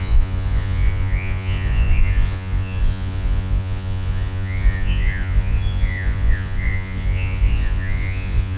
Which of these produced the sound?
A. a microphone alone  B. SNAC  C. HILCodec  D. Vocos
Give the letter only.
D